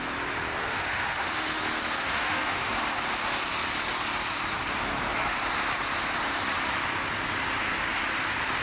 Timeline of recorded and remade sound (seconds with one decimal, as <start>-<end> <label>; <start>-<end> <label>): 0.0-0.6 recorded; 0.6-1.6 remade; 1.6-2.1 recorded; 2.1-2.7 remade; 2.7-8.6 recorded